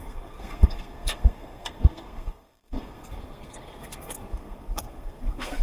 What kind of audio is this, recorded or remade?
remade